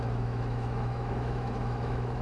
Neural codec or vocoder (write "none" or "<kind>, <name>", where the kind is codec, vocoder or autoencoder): autoencoder, DAC-VAE